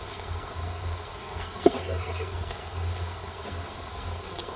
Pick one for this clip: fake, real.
fake